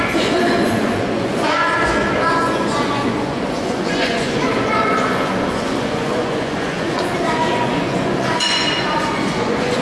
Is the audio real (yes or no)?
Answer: no